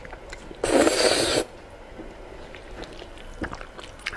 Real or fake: real